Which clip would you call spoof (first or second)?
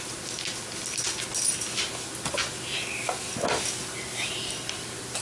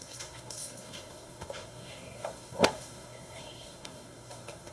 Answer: second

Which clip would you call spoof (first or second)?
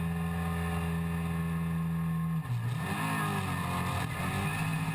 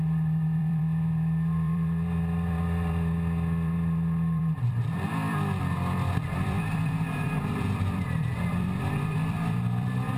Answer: second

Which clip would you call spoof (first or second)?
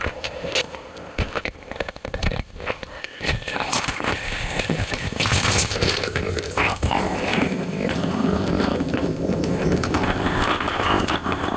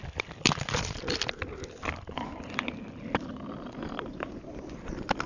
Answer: first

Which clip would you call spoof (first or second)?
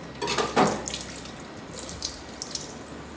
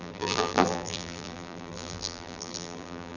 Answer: second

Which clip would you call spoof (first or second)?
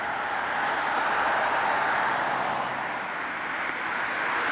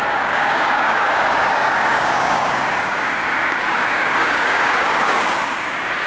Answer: second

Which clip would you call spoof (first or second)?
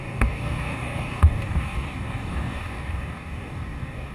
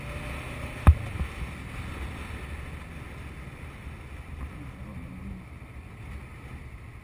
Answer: first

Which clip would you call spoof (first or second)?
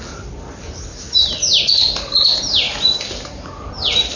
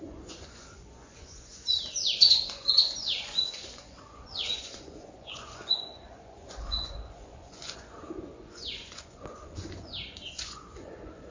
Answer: second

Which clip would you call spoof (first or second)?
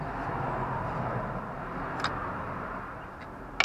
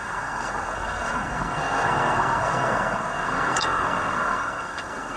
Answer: second